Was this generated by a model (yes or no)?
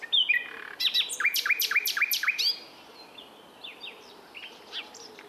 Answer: yes